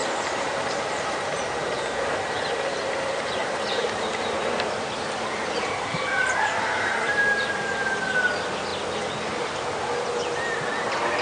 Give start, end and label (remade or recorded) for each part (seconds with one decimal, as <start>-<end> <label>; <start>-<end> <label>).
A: 0.0-1.2 remade; 1.2-2.7 recorded; 2.7-7.9 remade; 7.9-11.2 recorded